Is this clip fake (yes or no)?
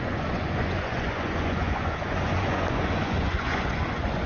yes